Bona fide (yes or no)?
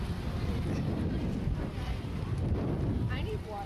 yes